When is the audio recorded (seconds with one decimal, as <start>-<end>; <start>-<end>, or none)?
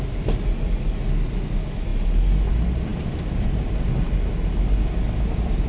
0.0-5.7